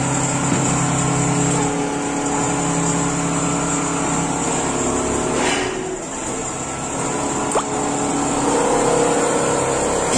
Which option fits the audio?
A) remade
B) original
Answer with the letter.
B